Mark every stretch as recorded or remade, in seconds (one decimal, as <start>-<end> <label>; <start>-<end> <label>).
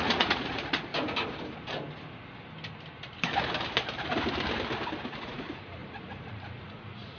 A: 0.0-0.9 remade; 0.9-5.2 recorded; 5.2-7.2 remade